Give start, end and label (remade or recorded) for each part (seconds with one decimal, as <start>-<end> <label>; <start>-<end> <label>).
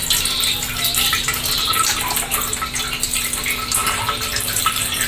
0.0-3.8 recorded; 3.8-5.1 remade